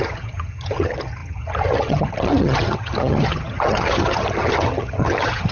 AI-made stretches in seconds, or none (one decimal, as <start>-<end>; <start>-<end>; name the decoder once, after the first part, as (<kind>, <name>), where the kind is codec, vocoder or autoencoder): 0.0-5.5 (vocoder, HiFi-GAN)